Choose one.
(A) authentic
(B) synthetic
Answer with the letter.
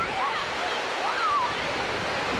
B